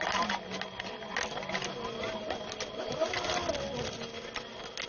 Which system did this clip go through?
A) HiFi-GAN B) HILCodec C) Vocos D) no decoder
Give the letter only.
D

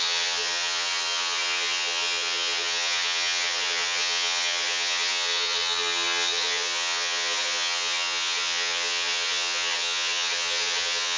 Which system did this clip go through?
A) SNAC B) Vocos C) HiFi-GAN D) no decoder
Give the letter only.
C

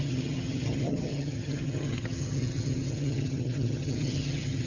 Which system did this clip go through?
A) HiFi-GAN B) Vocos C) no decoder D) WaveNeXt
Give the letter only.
A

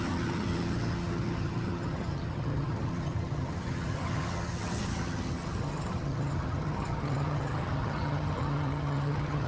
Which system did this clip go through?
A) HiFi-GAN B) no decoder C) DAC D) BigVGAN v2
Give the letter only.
A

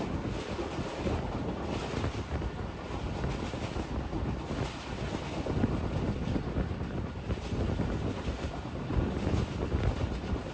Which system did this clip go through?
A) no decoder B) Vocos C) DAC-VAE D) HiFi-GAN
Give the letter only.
A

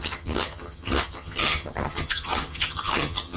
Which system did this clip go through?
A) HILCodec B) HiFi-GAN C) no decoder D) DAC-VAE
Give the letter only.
B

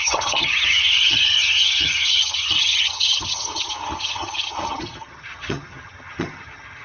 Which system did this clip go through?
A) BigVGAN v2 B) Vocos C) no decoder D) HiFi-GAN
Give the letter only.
D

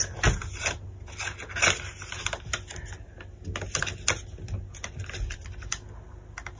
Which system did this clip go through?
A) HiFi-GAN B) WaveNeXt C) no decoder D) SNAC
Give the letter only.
C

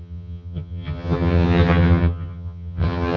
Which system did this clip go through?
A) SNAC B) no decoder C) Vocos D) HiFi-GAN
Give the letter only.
D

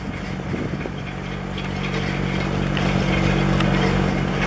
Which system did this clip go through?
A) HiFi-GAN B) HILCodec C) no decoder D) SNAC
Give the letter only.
C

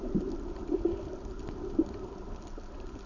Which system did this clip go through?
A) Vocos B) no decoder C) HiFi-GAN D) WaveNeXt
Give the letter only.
B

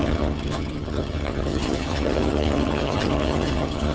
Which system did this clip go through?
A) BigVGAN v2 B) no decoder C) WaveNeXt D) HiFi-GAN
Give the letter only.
D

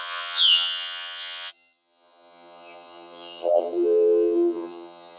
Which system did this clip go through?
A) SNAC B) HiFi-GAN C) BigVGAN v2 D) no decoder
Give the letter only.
B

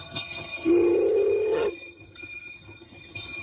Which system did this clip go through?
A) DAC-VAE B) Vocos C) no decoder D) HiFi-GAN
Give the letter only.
D